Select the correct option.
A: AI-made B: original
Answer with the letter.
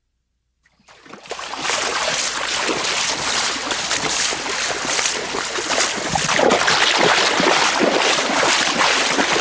B